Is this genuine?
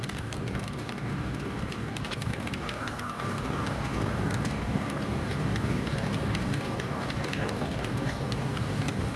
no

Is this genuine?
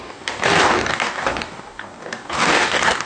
no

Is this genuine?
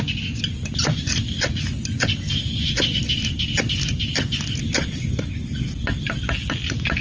yes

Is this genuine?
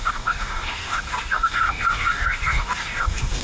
no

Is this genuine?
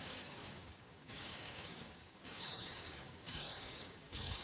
no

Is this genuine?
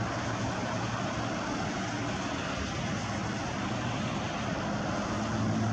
yes